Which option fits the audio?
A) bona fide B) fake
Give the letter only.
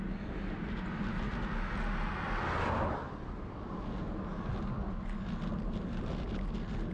A